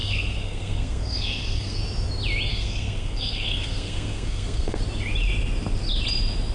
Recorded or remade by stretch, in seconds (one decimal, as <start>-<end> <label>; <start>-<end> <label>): 0.0-1.8 remade; 1.8-2.5 recorded; 2.5-4.8 remade; 4.8-6.5 recorded